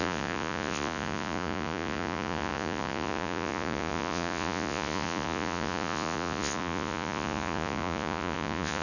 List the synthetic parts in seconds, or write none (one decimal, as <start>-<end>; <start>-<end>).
0.0-8.8